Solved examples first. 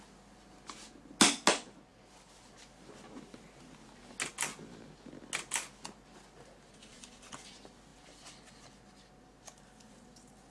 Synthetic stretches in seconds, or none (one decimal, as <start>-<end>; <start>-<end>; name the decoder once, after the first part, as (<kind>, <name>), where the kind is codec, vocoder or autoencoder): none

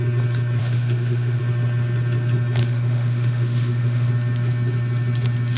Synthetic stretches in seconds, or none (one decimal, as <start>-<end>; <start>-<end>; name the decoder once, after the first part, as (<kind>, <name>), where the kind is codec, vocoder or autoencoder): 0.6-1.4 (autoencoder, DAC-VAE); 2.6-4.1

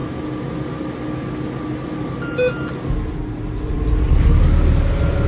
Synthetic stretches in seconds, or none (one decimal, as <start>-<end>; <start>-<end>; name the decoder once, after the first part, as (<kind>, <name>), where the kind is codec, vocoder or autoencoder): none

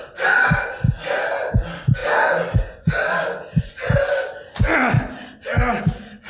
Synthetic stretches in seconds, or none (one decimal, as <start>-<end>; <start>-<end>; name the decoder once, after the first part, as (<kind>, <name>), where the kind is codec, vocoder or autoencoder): none

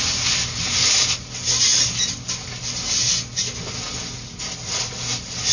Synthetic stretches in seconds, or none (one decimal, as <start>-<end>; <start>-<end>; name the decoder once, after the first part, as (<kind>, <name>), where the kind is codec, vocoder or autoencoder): none

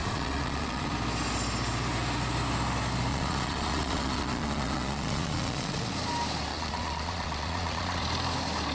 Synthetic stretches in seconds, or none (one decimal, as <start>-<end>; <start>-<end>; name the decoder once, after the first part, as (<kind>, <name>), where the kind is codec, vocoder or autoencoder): 0.0-0.9 (vocoder, Vocos); 3.1-5.9; 6.5-8.0